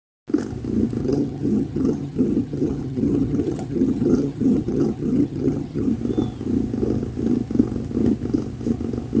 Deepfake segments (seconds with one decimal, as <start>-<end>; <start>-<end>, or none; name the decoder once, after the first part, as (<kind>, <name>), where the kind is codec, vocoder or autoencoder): 1.0-5.9 (vocoder, HiFi-GAN)